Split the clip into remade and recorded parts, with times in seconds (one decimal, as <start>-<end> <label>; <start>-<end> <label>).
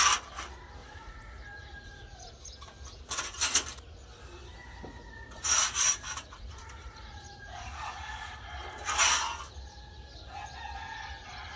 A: 0.0-0.8 recorded; 0.8-2.3 remade; 2.3-4.6 recorded; 4.6-8.5 remade; 8.5-11.6 recorded